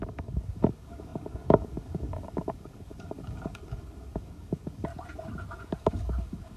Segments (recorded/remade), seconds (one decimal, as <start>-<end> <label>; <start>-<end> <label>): 0.0-4.9 remade; 4.9-5.8 recorded; 5.8-6.6 remade